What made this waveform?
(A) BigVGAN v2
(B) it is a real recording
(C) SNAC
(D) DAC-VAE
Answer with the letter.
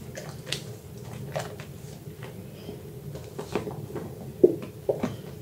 A